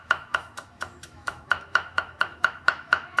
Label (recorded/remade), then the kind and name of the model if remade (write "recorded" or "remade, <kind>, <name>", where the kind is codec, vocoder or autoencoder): remade, autoencoder, DAC-VAE